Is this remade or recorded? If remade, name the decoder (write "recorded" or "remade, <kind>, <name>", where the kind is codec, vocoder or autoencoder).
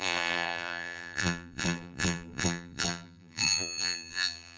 remade, vocoder, BigVGAN v2